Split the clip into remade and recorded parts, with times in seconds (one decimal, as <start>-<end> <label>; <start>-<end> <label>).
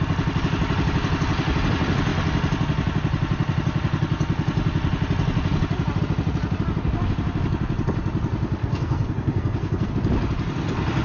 0.0-8.6 recorded; 8.6-9.9 remade; 9.9-11.0 recorded